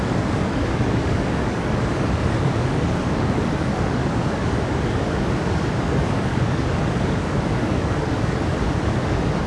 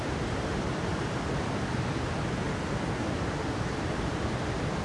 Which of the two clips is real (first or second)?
second